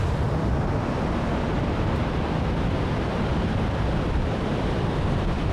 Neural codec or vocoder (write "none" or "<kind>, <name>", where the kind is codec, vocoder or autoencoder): none